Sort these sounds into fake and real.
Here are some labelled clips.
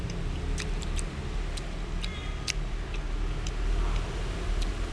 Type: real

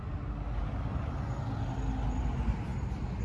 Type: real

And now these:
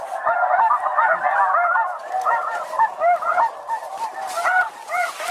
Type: real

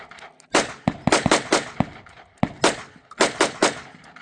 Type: real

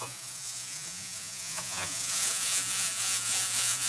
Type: fake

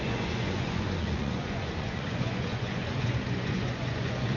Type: fake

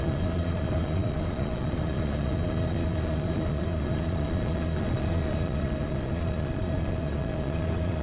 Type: fake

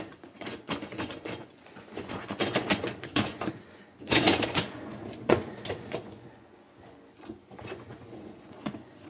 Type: fake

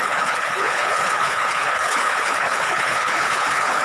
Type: fake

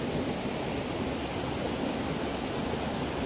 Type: real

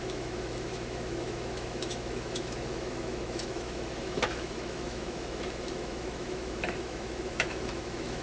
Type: fake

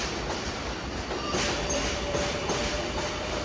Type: fake